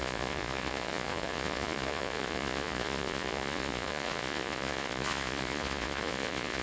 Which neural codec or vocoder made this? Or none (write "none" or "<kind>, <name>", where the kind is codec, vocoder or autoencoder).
vocoder, Vocos